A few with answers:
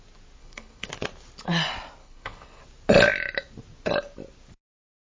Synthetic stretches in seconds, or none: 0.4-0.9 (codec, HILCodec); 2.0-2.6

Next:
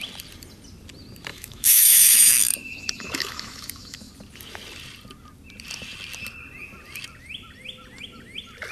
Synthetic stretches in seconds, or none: 1.3-4.1 (autoencoder, DAC-VAE)

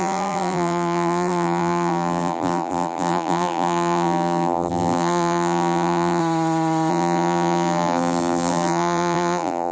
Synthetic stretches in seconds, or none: 0.0-6.2 (vocoder, BigVGAN v2); 6.9-9.7